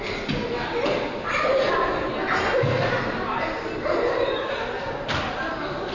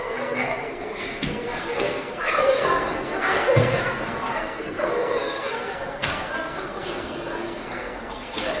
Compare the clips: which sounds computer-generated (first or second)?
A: second